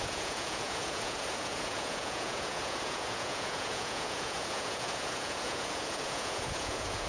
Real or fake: fake